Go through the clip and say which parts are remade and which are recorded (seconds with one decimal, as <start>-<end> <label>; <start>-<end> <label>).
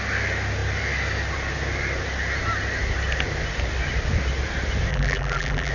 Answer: 0.0-4.9 recorded; 4.9-5.7 remade